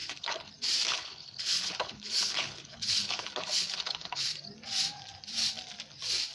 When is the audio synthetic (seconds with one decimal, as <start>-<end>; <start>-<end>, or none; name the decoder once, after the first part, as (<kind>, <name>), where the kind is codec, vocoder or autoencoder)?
0.0-0.5 (codec, HILCodec); 0.9-4.2